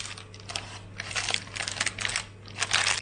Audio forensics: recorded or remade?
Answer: recorded